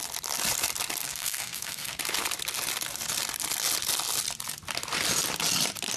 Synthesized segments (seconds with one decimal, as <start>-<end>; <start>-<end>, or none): 1.0-2.0